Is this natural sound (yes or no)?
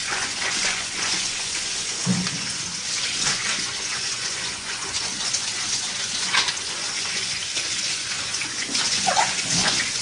no